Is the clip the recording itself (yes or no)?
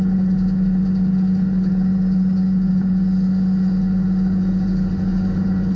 no